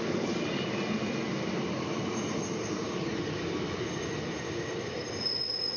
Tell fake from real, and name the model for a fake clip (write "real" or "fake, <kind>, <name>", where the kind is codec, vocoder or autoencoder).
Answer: real